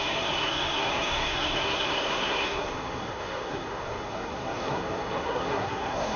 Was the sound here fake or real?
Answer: fake